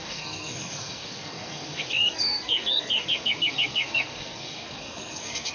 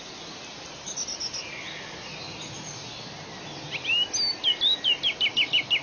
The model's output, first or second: first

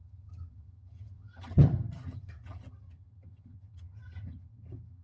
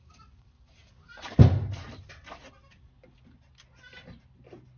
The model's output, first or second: first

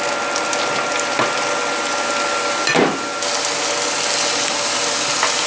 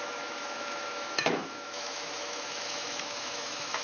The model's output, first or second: second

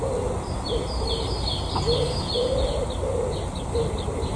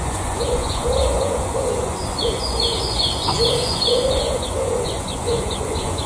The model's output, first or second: second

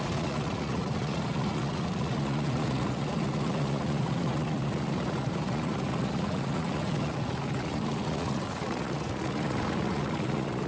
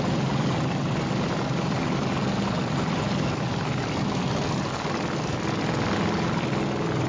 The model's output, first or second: first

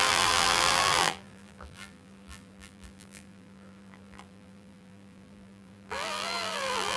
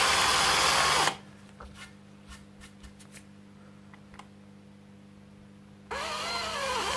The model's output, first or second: first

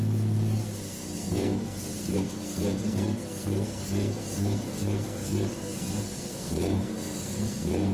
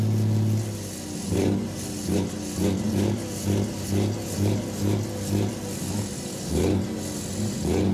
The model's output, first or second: first